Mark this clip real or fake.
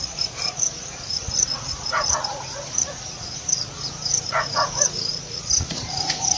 fake